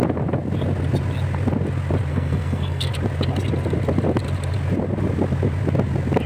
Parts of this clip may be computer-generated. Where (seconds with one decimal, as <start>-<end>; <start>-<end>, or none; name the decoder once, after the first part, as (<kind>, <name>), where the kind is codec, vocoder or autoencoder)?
2.1-2.9 (codec, SNAC)